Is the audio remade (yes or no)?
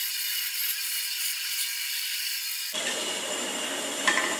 yes